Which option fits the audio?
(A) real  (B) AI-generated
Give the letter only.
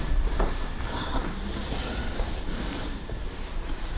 B